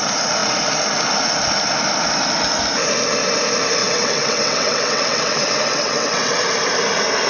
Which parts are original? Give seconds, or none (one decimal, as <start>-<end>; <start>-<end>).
0.0-3.8; 6.3-7.3